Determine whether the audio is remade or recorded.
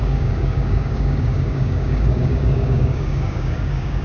remade